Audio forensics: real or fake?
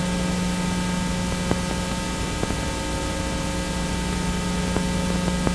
real